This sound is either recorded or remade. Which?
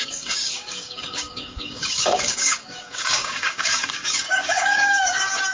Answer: remade